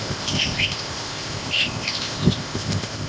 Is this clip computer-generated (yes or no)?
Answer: yes